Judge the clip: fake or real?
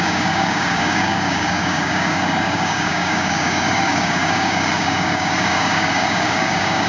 fake